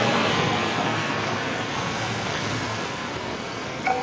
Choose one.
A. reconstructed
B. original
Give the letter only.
A